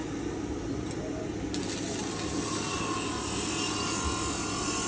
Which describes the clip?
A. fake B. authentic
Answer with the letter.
B